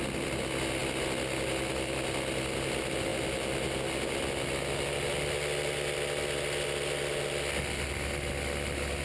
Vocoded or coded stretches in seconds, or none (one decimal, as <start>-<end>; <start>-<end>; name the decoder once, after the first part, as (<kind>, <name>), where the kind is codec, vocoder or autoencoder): none